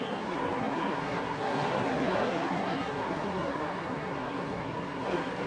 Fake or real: fake